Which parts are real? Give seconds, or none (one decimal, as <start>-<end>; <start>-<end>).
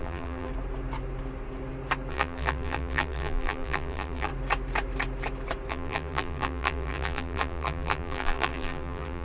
0.5-2.1; 4.3-5.7